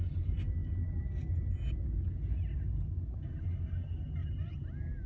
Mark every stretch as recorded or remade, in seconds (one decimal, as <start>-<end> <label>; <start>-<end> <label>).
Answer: 0.0-5.1 recorded